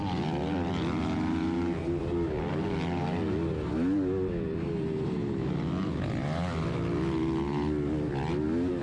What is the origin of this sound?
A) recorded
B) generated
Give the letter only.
A